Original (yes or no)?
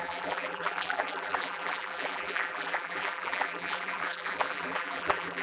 no